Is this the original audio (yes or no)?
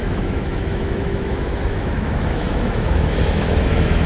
no